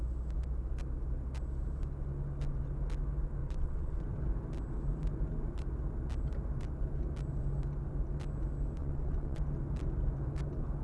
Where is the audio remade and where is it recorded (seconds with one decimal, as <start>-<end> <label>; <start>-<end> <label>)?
0.0-3.4 recorded; 3.4-4.0 remade; 4.0-8.8 recorded; 8.8-9.4 remade; 9.4-10.8 recorded